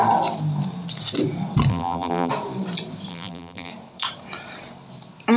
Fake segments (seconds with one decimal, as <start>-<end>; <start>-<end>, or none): 1.7-2.3; 3.1-3.7